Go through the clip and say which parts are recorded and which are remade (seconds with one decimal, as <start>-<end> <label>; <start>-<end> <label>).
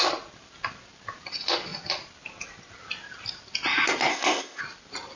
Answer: 0.0-4.1 recorded; 4.1-4.6 remade; 4.6-5.2 recorded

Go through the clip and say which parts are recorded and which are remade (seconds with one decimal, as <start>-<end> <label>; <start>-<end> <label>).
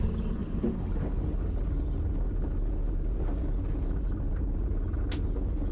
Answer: 0.0-5.7 recorded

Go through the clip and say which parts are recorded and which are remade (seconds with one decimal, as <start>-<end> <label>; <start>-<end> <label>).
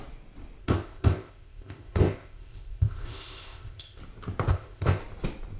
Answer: 0.0-0.6 recorded; 0.6-4.0 remade; 4.0-4.5 recorded; 4.5-5.0 remade; 5.0-5.6 recorded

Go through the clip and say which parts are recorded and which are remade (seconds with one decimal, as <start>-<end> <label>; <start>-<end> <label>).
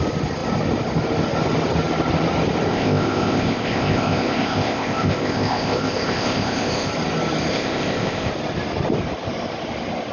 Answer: 0.0-2.7 recorded; 2.7-6.9 remade; 6.9-7.5 recorded; 7.5-8.3 remade; 8.3-10.1 recorded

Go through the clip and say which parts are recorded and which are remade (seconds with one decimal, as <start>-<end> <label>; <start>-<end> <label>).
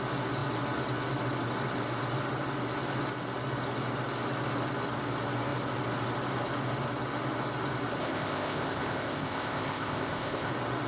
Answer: 0.0-8.0 recorded; 8.0-10.5 remade; 10.5-10.9 recorded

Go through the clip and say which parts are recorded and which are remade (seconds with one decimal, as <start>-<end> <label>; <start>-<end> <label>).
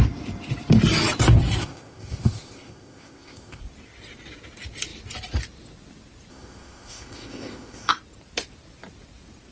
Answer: 0.0-1.6 recorded; 1.6-3.6 remade; 3.6-6.3 recorded; 6.3-7.9 remade; 7.9-9.5 recorded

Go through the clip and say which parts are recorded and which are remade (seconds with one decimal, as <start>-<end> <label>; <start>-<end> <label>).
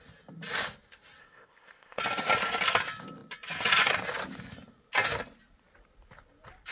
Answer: 0.0-1.2 recorded; 1.2-2.0 remade; 2.0-6.7 recorded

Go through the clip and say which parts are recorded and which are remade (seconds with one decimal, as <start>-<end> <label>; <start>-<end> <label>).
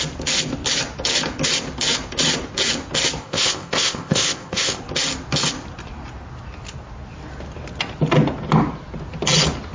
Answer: 0.0-3.2 recorded; 3.2-4.8 remade; 4.8-9.7 recorded